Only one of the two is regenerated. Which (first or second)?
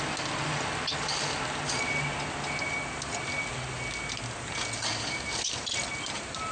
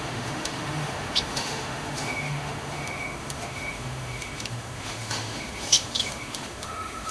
second